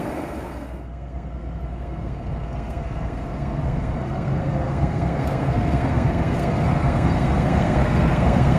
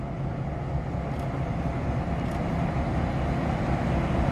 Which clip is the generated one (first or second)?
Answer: first